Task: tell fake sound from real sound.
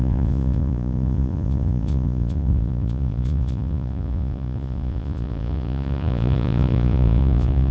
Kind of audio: fake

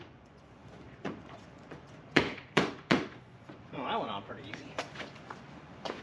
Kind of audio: fake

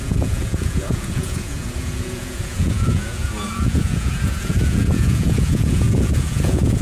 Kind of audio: fake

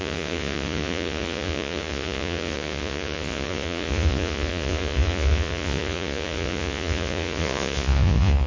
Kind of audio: fake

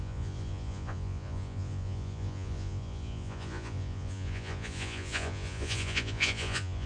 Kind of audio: fake